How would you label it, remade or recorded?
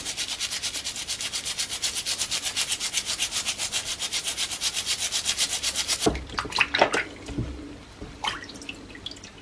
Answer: recorded